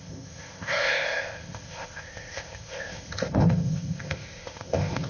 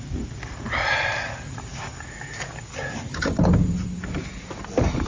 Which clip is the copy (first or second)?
first